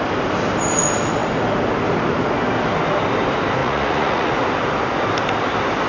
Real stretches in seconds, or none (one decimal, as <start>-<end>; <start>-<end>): 0.0-3.6; 4.3-5.9